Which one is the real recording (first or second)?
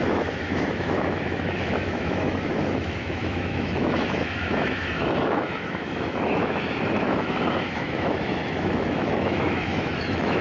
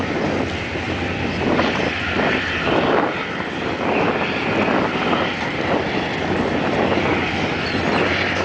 second